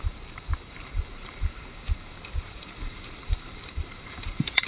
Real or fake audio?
fake